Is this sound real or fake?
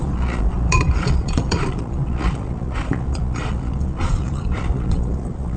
fake